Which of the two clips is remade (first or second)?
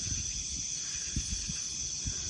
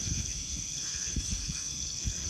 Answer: second